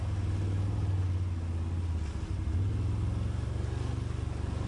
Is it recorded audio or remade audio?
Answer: recorded